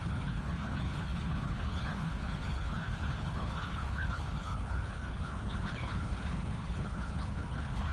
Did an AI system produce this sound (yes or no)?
yes